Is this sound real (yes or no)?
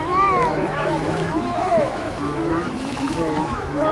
no